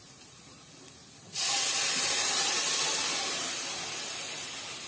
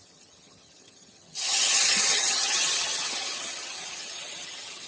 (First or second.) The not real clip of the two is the second